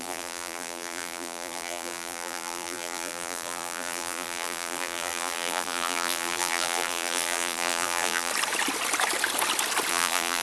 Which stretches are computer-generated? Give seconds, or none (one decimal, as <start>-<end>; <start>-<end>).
0.0-8.3; 9.9-10.4